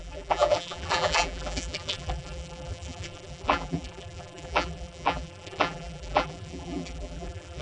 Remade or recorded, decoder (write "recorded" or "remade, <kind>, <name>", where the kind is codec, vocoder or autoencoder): remade, vocoder, BigVGAN v2